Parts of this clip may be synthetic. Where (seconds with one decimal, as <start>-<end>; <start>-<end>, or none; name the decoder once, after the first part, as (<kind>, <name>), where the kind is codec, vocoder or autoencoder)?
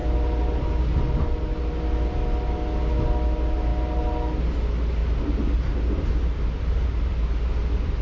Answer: none